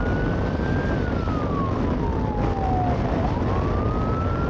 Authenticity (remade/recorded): recorded